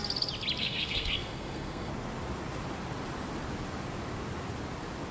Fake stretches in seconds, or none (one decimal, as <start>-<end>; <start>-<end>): 0.6-1.9